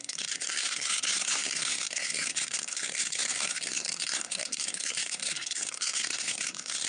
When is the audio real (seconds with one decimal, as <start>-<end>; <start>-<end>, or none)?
none